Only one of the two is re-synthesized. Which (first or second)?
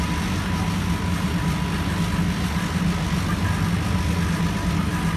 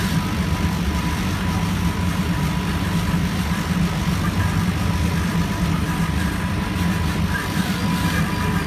second